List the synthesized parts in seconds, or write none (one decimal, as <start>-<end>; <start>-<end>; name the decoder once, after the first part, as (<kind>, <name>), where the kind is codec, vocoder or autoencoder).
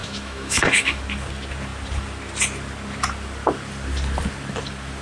0.0-1.0 (autoencoder, DAC-VAE)